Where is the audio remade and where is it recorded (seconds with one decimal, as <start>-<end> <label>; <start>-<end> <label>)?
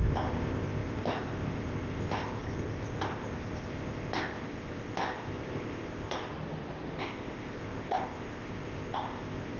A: 0.0-6.3 remade; 6.3-7.0 recorded; 7.0-9.6 remade